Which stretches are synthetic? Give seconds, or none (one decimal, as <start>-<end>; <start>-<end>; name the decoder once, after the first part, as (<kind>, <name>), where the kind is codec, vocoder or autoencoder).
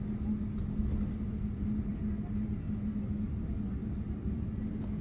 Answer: none